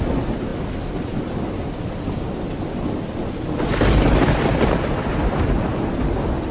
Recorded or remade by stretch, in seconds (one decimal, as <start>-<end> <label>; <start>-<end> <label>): 0.0-6.5 recorded